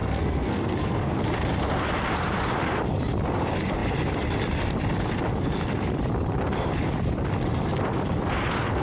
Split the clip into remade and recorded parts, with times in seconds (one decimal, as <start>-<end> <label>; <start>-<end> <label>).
0.0-1.1 remade; 1.1-8.8 recorded